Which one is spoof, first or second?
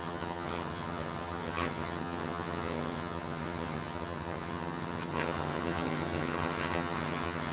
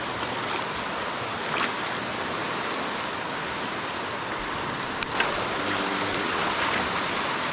first